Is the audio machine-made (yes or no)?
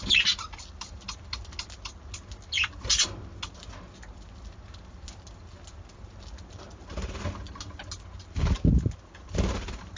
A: no